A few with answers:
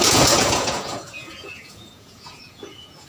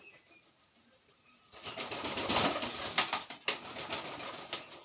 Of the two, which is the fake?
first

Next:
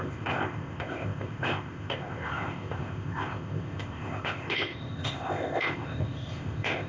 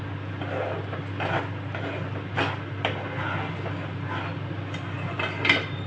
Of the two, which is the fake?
first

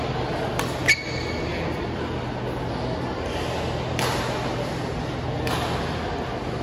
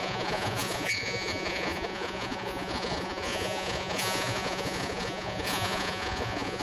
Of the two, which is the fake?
second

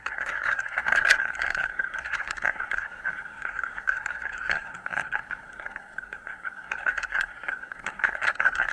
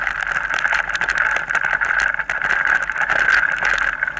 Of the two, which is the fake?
first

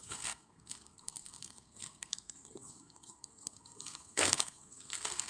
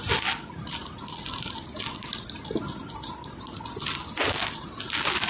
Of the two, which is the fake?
first